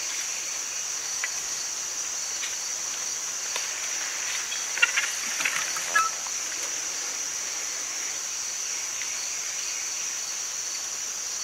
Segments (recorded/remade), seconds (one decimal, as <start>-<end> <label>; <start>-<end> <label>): 0.0-1.0 recorded; 1.0-1.6 remade; 1.6-11.4 recorded